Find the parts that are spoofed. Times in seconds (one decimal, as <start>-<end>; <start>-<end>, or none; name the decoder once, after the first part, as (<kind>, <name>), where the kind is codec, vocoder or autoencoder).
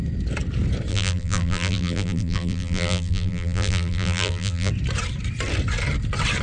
0.9-4.7 (vocoder, BigVGAN v2)